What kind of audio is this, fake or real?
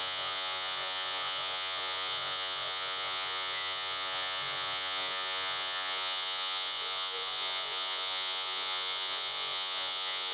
fake